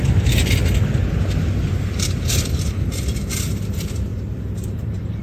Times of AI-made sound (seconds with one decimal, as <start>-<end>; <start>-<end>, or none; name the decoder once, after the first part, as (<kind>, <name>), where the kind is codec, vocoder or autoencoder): 0.0-0.4 (vocoder, BigVGAN v2); 1.7-5.2